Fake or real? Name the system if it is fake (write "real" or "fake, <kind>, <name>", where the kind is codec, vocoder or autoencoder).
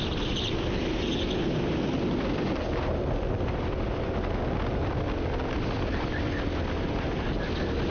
real